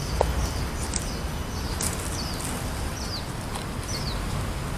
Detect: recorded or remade recorded